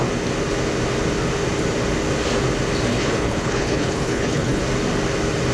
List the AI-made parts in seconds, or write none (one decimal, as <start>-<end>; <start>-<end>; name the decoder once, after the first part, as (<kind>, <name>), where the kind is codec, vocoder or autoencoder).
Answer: 2.9-4.6 (codec, HILCodec)